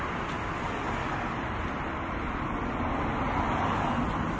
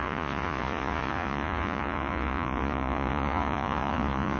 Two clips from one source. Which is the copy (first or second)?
second